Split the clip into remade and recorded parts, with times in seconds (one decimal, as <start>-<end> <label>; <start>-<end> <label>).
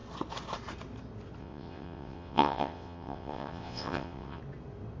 0.0-1.4 recorded; 1.4-4.4 remade; 4.4-5.0 recorded